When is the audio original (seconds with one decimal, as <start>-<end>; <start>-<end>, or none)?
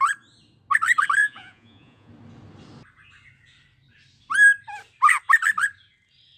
0.0-1.2; 2.1-6.4